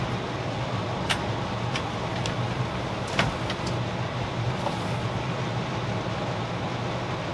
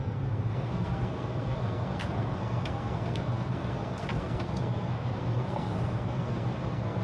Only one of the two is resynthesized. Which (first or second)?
second